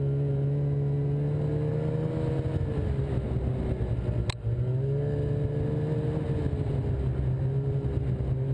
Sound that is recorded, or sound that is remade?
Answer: recorded